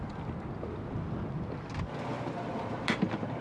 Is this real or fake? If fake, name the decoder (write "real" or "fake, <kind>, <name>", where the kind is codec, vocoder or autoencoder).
real